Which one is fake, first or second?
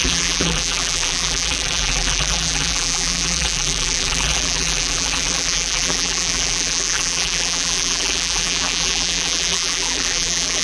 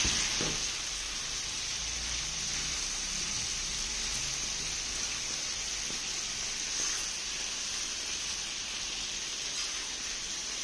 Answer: first